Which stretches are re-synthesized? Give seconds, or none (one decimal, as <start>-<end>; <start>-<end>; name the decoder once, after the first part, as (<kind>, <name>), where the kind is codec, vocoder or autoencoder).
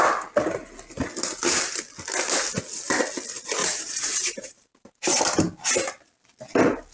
3.6-5.2 (vocoder, BigVGAN v2)